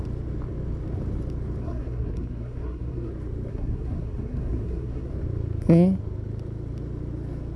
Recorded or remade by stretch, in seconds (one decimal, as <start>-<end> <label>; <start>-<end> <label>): 0.0-1.6 recorded; 1.6-3.1 remade; 3.1-3.5 recorded; 3.5-5.1 remade; 5.1-7.6 recorded